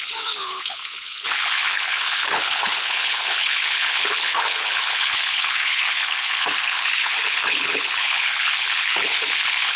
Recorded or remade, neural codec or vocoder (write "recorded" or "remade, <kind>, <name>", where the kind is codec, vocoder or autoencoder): remade, codec, HILCodec